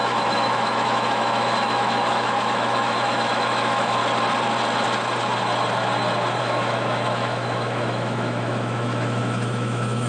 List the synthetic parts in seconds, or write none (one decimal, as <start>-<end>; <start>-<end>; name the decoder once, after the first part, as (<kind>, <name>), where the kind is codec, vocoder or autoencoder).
0.0-4.0 (autoencoder, DAC-VAE); 6.4-10.1